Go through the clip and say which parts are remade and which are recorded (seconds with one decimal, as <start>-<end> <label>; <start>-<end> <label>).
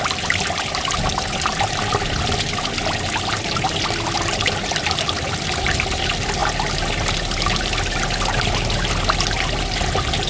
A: 0.0-10.3 recorded